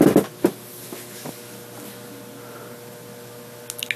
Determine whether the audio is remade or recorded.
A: recorded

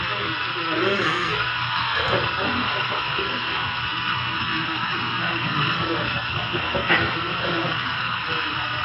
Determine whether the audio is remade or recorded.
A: remade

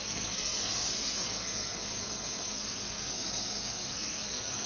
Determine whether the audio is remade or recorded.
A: remade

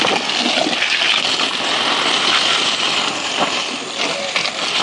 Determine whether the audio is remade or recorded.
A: recorded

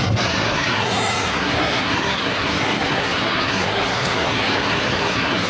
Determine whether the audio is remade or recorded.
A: remade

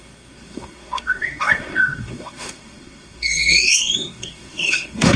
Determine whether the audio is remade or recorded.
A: remade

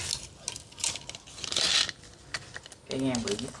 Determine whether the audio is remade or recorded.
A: recorded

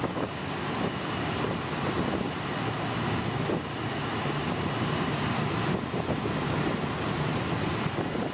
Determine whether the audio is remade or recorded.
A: recorded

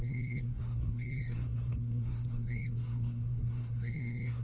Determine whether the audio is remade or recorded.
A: remade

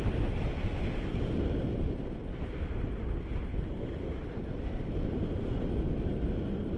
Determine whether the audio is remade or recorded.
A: recorded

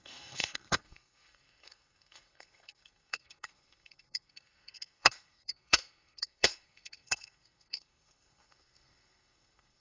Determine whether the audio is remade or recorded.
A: remade